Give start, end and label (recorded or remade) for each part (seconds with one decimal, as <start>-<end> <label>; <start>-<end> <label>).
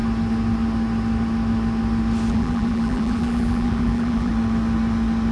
0.0-2.3 recorded; 2.3-4.3 remade; 4.3-5.3 recorded